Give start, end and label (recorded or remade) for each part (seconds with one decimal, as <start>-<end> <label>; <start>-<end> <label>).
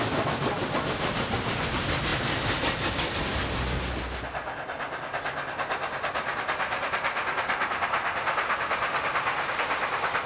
0.0-10.3 recorded